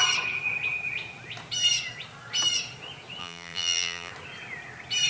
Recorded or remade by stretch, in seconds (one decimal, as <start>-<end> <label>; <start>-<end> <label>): 0.0-3.2 recorded; 3.2-4.1 remade; 4.1-5.1 recorded